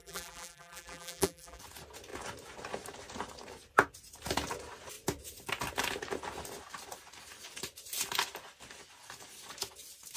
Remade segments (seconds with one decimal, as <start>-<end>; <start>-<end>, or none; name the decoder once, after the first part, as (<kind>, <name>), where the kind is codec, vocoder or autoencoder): 0.0-1.6 (vocoder, BigVGAN v2)